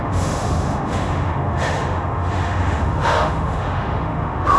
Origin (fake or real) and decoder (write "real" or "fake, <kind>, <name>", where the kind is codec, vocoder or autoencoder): fake, autoencoder, DAC-VAE